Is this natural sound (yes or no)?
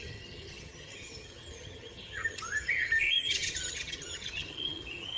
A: no